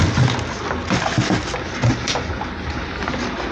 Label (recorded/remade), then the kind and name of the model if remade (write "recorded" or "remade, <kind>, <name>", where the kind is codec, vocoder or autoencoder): recorded